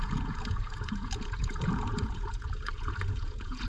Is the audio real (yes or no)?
no